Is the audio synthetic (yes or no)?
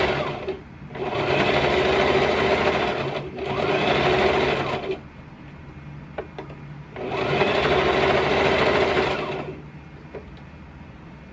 no